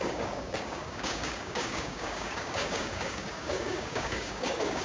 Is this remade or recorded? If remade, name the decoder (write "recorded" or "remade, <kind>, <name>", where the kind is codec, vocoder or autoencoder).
remade, codec, DAC